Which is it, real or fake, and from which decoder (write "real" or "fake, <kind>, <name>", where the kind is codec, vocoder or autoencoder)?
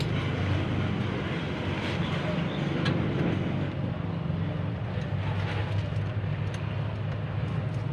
real